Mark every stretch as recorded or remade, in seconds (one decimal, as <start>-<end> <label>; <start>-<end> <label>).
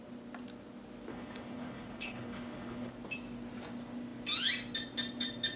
0.0-1.1 recorded; 1.1-2.9 remade; 2.9-5.6 recorded